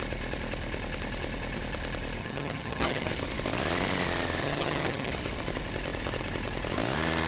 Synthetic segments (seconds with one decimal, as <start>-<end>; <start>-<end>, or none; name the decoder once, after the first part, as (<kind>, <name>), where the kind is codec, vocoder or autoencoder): 2.2-3.1 (vocoder, HiFi-GAN); 4.4-5.1